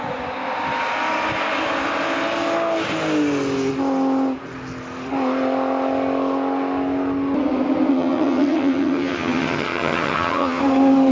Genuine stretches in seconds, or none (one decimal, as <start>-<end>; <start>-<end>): 0.0-7.9; 10.6-11.1